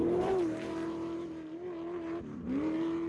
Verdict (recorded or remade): remade